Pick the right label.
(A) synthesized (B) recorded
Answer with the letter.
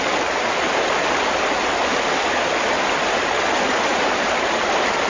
B